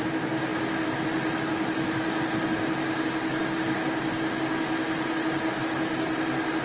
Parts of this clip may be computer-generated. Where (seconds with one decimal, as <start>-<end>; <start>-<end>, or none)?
none